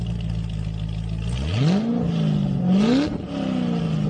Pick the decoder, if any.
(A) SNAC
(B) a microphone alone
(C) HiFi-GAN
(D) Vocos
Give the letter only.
B